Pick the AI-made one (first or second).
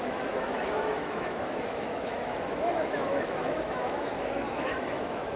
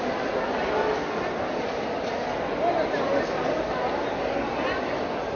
first